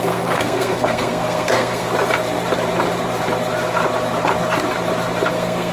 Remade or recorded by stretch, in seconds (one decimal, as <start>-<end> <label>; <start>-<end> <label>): 0.0-1.9 remade; 1.9-5.3 recorded; 5.3-5.7 remade